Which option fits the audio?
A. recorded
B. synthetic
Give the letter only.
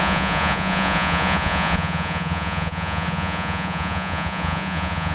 B